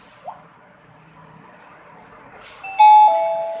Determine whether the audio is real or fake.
real